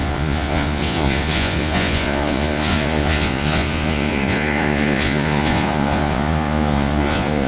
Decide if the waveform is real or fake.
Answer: fake